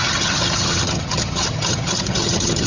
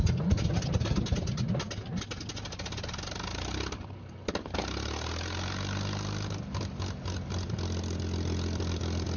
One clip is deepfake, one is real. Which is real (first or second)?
second